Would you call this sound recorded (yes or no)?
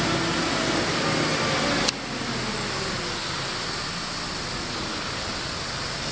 yes